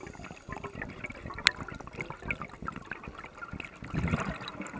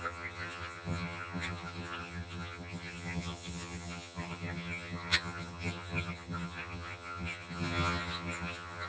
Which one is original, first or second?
first